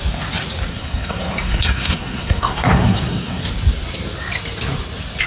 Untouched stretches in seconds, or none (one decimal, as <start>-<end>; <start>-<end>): 0.0-0.7; 3.4-5.3